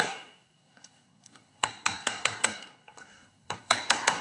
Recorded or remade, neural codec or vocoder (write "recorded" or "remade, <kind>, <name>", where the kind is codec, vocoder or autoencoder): remade, codec, SNAC